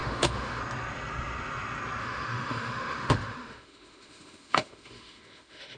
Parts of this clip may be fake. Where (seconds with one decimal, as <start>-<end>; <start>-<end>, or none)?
0.0-0.6; 2.0-5.8